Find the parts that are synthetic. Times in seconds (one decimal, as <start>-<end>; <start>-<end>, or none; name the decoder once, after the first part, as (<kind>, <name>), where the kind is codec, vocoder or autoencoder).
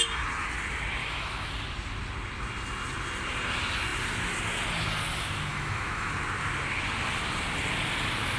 1.0-1.5 (autoencoder, DAC-VAE); 5.5-6.1